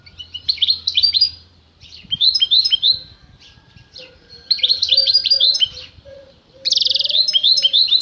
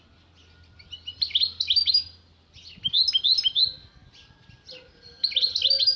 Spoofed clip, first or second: first